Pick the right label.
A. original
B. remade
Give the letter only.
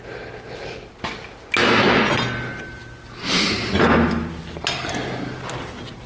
A